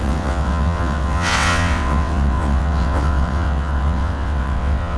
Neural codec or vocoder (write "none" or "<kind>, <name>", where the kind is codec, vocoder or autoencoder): vocoder, WaveNeXt